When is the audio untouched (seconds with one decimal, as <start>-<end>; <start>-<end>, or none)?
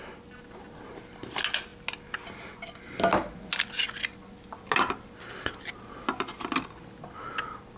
0.0-7.8